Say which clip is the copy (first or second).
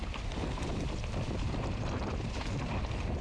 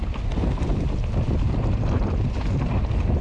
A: first